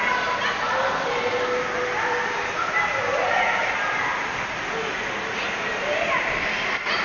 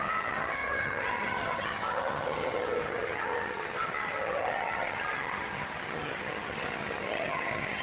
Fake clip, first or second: second